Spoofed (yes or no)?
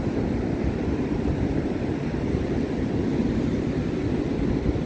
no